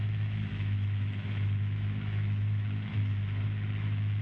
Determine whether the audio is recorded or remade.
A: remade